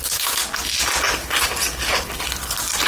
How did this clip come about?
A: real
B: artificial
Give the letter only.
A